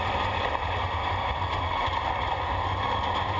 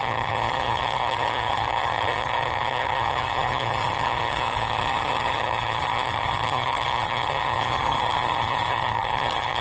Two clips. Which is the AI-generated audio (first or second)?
second